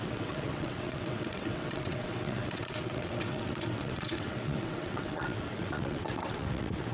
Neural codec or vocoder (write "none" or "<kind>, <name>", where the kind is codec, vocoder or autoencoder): vocoder, WaveNeXt